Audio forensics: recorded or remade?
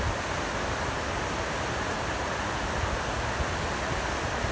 recorded